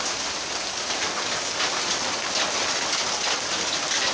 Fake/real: real